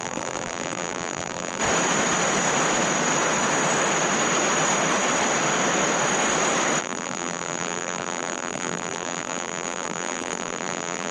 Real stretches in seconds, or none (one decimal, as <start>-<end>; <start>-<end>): 1.6-6.8